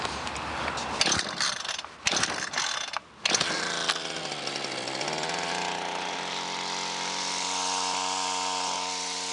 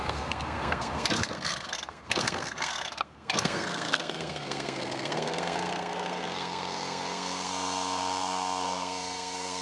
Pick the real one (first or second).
first